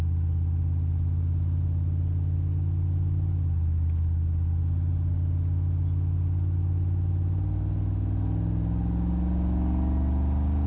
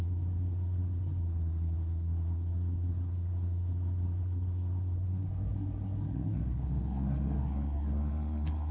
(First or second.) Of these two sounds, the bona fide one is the first